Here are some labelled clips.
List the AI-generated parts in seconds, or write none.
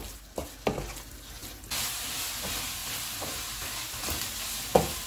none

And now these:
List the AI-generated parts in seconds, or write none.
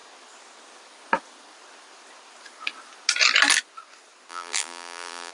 4.3-5.3 (vocoder, BigVGAN v2)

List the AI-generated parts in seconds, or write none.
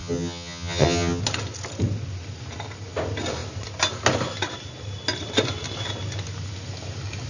0.0-1.2 (vocoder, HiFi-GAN)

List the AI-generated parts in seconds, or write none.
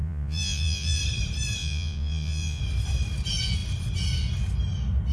0.0-1.0 (vocoder, Vocos); 1.6-2.6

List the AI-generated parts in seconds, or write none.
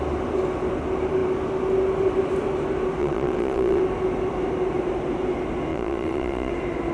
3.0-3.8 (vocoder, Vocos); 5.7-6.5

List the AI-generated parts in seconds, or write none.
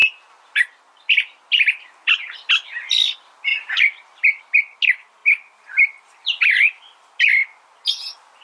3.5-4.4 (vocoder, BigVGAN v2); 5.2-7.1